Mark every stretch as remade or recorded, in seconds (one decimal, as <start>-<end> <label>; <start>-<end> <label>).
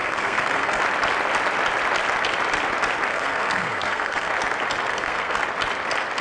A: 0.0-0.8 remade; 0.8-3.1 recorded; 3.1-4.3 remade; 4.3-4.9 recorded; 4.9-5.4 remade; 5.4-6.2 recorded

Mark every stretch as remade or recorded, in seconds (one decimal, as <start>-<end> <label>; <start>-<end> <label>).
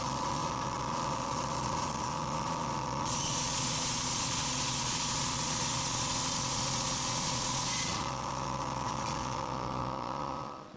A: 0.0-10.8 remade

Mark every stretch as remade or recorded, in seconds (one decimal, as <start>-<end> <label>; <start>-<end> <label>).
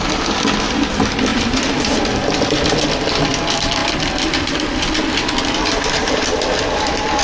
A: 0.0-7.2 recorded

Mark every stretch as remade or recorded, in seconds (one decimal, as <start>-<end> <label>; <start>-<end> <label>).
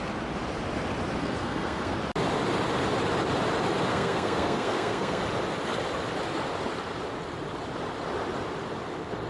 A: 0.0-1.2 recorded; 1.2-1.9 remade; 1.9-3.9 recorded; 3.9-5.2 remade; 5.2-9.3 recorded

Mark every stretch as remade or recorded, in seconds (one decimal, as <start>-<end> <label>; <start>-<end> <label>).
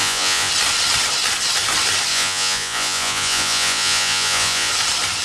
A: 0.0-0.5 remade; 0.5-2.1 recorded; 2.1-4.7 remade; 4.7-5.2 recorded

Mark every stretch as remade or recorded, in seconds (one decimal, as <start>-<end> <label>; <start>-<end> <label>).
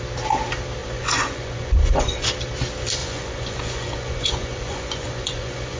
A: 0.0-0.8 recorded; 0.8-2.3 remade; 2.3-3.0 recorded; 3.0-5.8 remade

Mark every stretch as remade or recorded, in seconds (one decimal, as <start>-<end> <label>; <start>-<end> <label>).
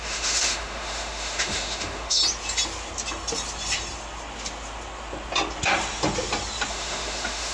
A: 0.0-2.2 remade; 2.2-6.7 recorded; 6.7-7.5 remade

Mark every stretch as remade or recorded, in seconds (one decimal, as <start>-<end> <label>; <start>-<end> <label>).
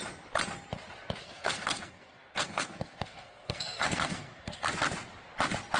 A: 0.0-1.2 recorded; 1.2-4.7 remade; 4.7-5.8 recorded